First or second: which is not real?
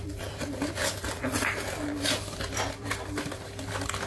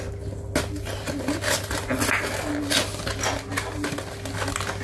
first